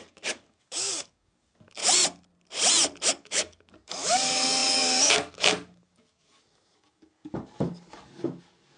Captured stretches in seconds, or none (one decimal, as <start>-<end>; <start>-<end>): 1.8-3.1